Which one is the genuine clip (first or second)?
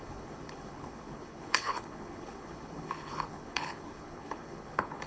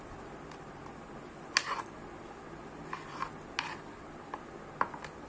second